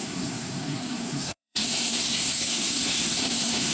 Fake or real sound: fake